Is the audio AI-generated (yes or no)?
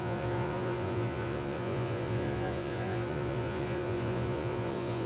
yes